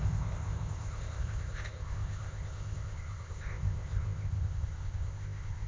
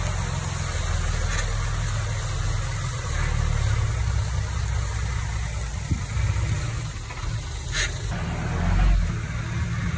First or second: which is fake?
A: first